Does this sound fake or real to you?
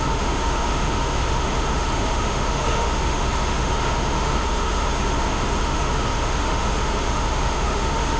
fake